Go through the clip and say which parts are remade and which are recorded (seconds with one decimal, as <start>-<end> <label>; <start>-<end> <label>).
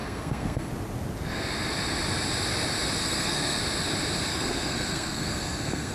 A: 0.0-0.7 remade; 0.7-3.0 recorded; 3.0-3.6 remade; 3.6-4.3 recorded; 4.3-5.9 remade